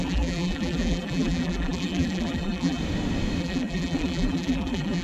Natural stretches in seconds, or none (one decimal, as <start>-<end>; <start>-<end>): 2.8-3.4